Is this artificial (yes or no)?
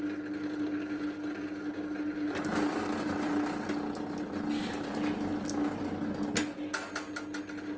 no